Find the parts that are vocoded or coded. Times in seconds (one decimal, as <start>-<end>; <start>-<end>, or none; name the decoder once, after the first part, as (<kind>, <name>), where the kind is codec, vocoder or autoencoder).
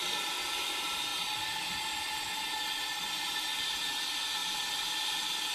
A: none